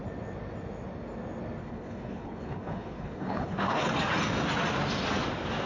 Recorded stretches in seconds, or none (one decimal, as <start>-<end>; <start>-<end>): 0.0-1.6; 3.9-5.7